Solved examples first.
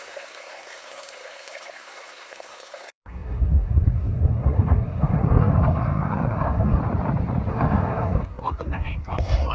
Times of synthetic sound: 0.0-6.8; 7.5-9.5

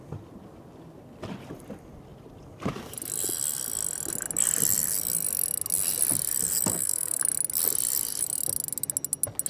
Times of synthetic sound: 6.7-7.2

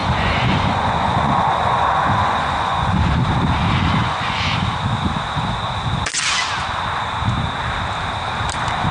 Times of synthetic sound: 0.0-3.1; 4.0-4.5

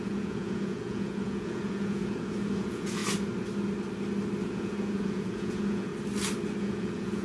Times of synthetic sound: 0.0-3.0; 4.4-5.9; 6.6-7.2

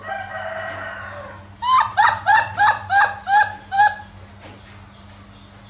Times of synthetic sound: 1.9-2.6